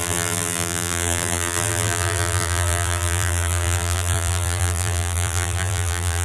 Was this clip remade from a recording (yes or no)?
yes